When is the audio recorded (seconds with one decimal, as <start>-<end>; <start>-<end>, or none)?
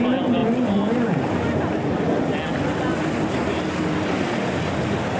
0.0-0.4; 1.9-5.2